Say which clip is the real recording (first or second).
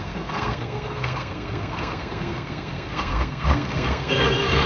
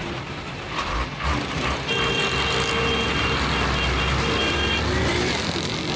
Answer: second